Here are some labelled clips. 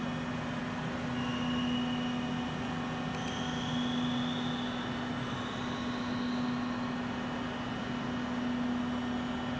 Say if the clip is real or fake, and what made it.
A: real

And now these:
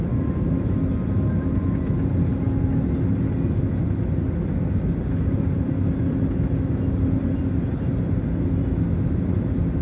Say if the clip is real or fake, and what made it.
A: real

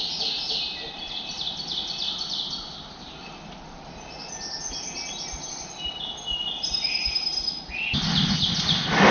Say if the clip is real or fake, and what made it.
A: real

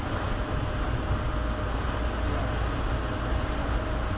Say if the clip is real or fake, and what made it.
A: real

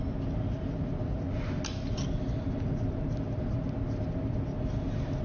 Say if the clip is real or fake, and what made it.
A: real